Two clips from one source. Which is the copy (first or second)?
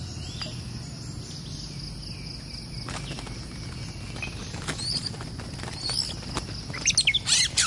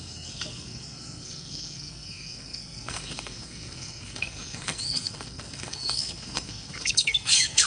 second